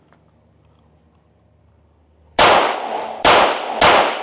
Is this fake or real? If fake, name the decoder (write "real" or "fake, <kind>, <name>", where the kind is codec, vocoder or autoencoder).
real